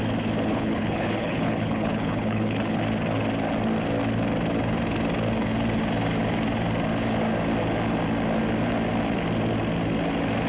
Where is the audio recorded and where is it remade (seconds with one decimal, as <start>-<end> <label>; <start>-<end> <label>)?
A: 0.0-0.5 recorded; 0.5-2.8 remade; 2.8-10.5 recorded

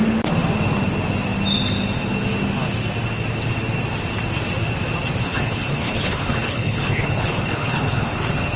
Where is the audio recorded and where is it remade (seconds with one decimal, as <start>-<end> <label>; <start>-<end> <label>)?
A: 0.0-5.2 recorded; 5.2-8.2 remade; 8.2-8.6 recorded

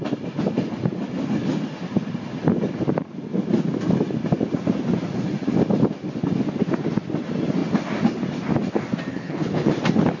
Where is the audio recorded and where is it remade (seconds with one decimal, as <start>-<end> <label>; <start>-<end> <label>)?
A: 0.0-9.1 recorded; 9.1-9.7 remade; 9.7-10.2 recorded

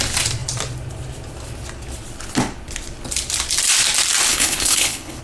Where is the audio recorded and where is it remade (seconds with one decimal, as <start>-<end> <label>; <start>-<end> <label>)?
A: 0.0-4.3 recorded; 4.3-5.2 remade